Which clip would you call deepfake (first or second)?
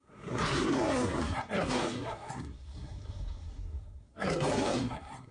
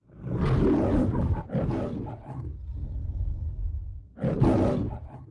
first